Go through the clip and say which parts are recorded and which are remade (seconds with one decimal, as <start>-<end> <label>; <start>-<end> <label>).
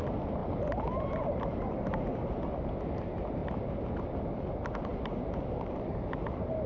0.0-0.4 recorded; 0.4-2.3 remade; 2.3-3.4 recorded; 3.4-3.9 remade; 3.9-4.9 recorded; 4.9-6.7 remade